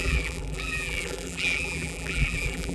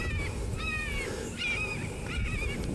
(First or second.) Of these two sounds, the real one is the second